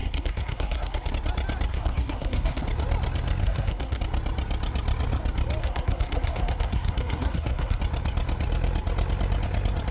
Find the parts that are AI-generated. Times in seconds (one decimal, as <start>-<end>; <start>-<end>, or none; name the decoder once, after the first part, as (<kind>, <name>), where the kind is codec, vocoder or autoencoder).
0.0-1.1 (codec, SNAC); 1.7-2.6; 3.4-4.0; 5.6-7.8